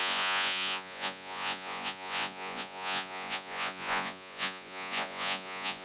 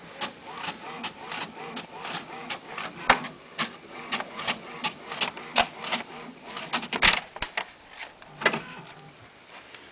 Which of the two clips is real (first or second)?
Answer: second